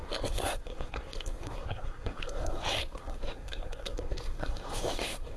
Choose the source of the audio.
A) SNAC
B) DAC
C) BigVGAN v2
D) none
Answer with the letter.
A